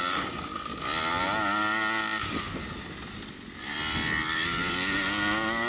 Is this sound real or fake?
real